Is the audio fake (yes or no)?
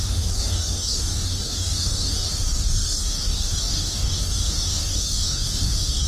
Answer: yes